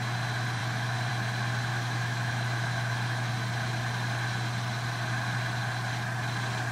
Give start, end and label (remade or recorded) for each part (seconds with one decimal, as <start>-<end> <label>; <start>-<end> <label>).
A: 0.0-0.6 recorded; 0.6-1.1 remade; 1.1-1.7 recorded; 1.7-3.3 remade; 3.3-6.7 recorded